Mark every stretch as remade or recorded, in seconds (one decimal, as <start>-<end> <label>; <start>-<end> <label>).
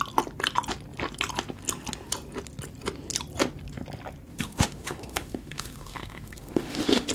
0.0-4.3 recorded; 4.3-7.1 remade